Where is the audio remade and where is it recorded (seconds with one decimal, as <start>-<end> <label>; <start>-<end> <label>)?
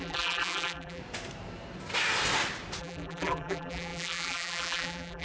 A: 0.0-1.0 remade; 1.0-2.8 recorded; 2.8-5.2 remade